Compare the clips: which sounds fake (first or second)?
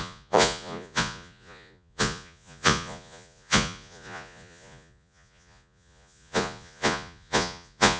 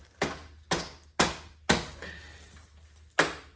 first